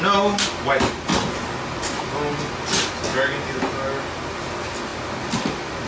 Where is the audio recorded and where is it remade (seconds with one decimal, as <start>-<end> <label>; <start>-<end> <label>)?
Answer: 0.0-5.9 recorded